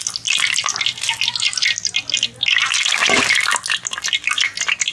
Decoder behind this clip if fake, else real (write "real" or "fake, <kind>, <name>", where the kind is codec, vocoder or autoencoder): real